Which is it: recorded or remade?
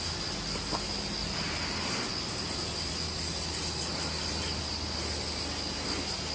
recorded